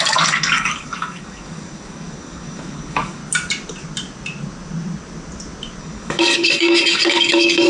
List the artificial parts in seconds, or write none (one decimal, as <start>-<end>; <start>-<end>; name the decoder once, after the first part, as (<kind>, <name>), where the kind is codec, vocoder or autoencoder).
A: 0.0-3.2 (codec, DAC); 5.8-7.7